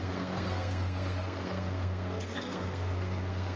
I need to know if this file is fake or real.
fake